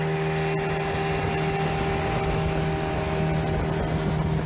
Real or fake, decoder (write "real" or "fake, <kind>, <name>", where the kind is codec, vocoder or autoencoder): real